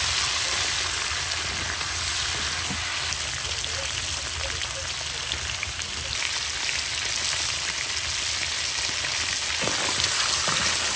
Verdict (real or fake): real